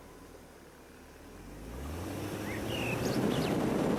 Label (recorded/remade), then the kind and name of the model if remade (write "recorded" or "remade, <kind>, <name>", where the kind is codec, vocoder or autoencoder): recorded